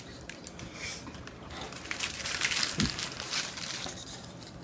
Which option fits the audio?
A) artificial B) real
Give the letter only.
A